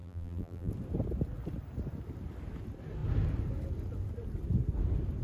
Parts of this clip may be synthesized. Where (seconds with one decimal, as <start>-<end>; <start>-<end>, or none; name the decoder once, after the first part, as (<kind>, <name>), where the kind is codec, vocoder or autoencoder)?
0.0-0.7 (vocoder, BigVGAN v2)